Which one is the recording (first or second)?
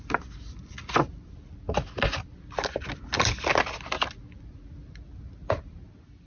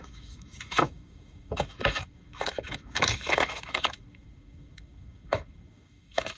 first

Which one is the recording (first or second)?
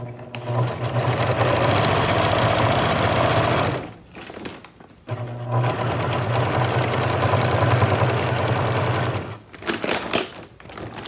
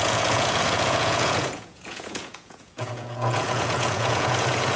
first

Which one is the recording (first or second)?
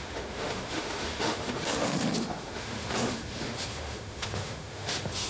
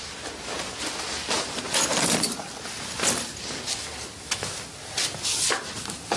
second